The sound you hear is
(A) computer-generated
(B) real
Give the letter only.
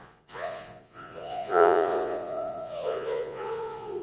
A